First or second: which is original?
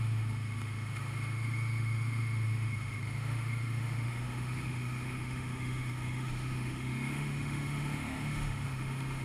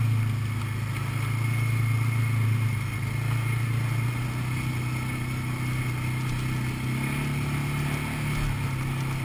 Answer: second